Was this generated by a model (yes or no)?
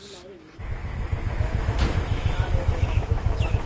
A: yes